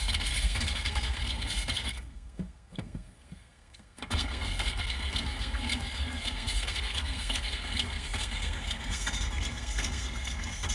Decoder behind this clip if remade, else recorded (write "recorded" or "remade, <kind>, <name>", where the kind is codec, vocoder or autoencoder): remade, codec, SNAC